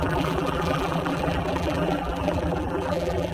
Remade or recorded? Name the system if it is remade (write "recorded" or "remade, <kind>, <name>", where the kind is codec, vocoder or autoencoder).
remade, vocoder, BigVGAN v2